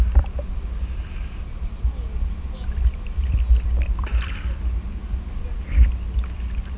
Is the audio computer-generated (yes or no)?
no